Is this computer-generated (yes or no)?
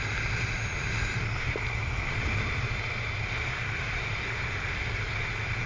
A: no